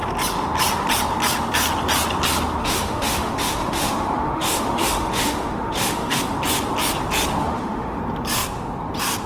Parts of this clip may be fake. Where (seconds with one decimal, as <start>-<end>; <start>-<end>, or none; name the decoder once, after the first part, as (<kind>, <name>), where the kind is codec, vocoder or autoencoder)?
2.6-6.2 (autoencoder, DAC-VAE); 7.4-8.0